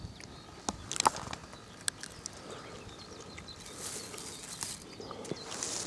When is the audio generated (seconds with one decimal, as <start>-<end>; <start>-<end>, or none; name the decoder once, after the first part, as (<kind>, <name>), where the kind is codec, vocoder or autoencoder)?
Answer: none